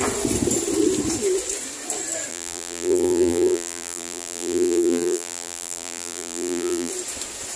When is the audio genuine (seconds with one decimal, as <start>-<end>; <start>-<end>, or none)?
0.0-2.3; 6.9-7.6